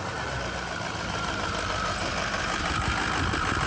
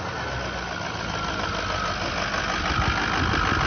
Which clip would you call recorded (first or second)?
second